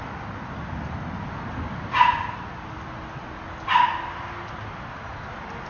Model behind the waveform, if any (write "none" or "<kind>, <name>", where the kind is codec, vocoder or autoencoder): none